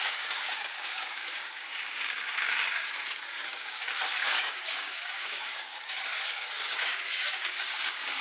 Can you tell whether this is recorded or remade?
remade